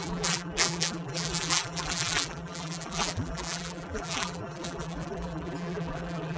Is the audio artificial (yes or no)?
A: yes